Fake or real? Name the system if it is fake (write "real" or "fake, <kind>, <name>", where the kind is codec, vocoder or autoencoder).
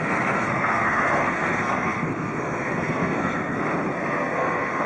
fake, codec, SNAC